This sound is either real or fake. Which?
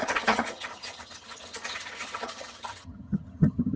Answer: fake